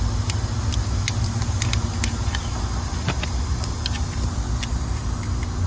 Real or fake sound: real